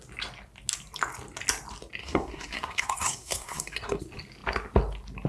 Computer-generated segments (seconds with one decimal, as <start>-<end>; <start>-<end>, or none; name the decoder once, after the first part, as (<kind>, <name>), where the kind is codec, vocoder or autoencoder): 2.0-4.0 (codec, SNAC)